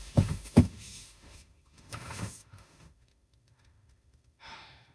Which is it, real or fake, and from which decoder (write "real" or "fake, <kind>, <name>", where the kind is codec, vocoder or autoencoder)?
fake, autoencoder, DAC-VAE